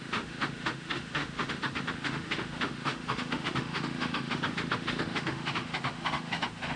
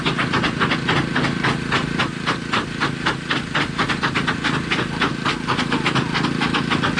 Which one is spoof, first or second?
first